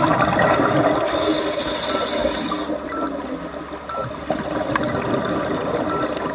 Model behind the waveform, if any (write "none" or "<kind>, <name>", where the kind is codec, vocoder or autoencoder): none